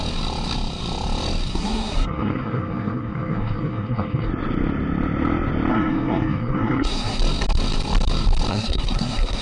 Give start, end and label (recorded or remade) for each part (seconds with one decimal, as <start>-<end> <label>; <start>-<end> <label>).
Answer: 0.0-1.5 recorded; 1.5-4.3 remade; 4.3-5.7 recorded; 5.7-7.2 remade; 7.2-8.5 recorded; 8.5-9.4 remade